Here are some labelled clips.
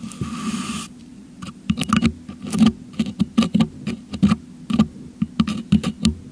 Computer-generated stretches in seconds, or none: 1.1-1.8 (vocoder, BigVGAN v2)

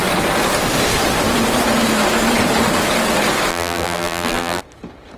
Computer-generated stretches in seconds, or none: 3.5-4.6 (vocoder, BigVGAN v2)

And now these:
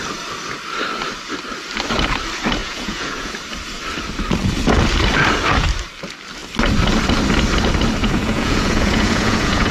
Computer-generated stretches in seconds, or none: 2.6-3.3 (vocoder, Vocos); 8.0-9.7

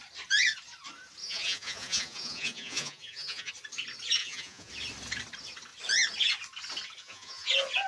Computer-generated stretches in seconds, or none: 1.2-3.5 (vocoder, Vocos); 4.2-4.7; 7.0-7.5

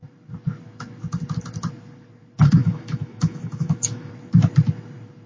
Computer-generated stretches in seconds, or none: 2.6-4.1 (autoencoder, DAC-VAE)

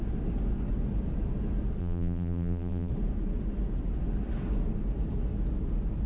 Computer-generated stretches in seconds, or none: 1.8-2.9 (vocoder, BigVGAN v2)

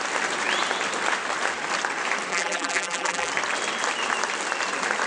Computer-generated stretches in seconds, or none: 2.3-3.3 (vocoder, BigVGAN v2)